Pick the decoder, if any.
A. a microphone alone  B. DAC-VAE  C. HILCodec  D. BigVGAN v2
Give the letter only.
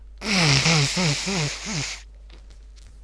A